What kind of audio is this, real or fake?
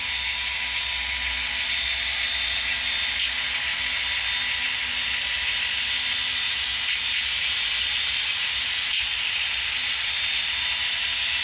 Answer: real